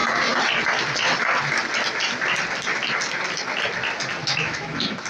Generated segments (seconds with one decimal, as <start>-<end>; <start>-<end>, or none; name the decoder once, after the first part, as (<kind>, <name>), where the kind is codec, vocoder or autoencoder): 4.2-5.1 (autoencoder, DAC-VAE)